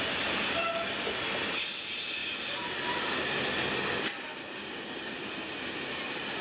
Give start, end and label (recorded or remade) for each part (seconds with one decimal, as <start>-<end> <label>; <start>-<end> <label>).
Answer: 0.0-6.4 recorded